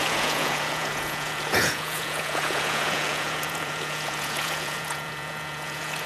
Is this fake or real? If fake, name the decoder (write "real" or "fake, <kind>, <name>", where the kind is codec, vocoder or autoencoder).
fake, vocoder, Vocos